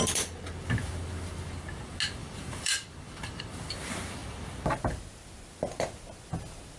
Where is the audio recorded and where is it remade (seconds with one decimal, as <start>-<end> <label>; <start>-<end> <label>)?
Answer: 0.0-2.2 recorded; 2.2-3.4 remade; 3.4-6.8 recorded